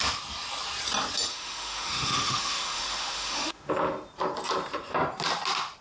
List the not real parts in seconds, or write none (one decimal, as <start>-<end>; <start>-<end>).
1.3-3.7